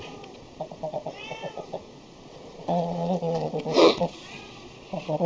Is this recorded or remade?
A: remade